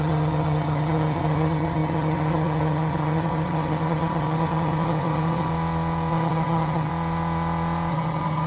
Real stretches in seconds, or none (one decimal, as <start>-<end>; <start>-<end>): 5.5-6.1; 6.9-7.9